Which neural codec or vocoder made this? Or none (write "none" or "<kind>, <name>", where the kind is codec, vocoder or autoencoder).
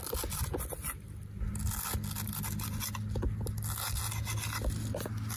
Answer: none